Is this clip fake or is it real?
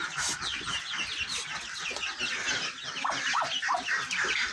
real